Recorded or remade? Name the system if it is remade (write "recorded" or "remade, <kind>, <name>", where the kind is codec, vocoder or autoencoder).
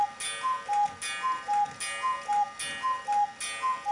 recorded